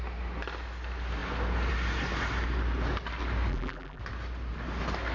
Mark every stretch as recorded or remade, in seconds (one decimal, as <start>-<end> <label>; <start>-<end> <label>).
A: 0.0-3.5 recorded; 3.5-4.0 remade; 4.0-5.1 recorded